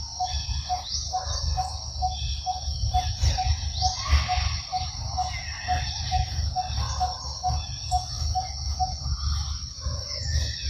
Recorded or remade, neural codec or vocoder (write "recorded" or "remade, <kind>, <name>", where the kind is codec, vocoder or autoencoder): recorded